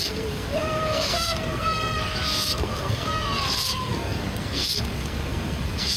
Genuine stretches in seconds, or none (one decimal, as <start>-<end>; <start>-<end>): none